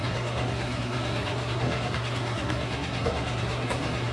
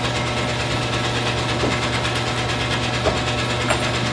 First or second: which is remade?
first